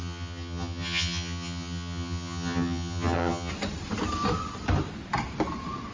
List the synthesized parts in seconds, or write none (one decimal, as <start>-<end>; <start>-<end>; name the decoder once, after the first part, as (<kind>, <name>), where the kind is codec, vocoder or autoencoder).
0.0-3.5 (vocoder, HiFi-GAN)